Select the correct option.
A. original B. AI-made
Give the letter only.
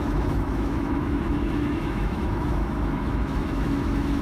B